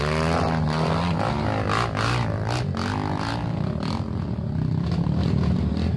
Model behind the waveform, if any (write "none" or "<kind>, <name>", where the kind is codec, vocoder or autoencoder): none